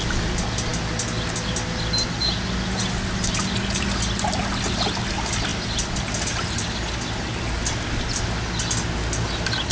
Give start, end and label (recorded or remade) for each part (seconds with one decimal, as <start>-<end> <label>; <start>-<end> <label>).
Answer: 0.0-9.7 recorded